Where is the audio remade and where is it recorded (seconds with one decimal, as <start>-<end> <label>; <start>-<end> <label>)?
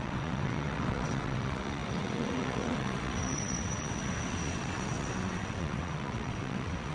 0.0-6.9 remade